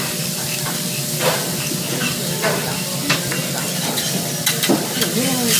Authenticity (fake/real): real